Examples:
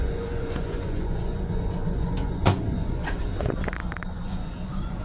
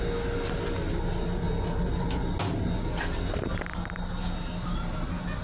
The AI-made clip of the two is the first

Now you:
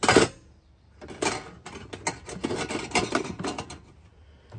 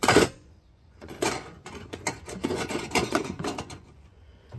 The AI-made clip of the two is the second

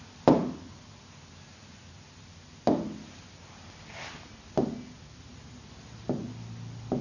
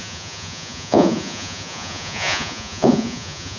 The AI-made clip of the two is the second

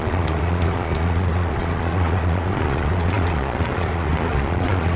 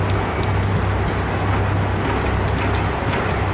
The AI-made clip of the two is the first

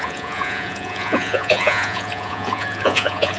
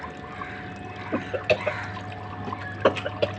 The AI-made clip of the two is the first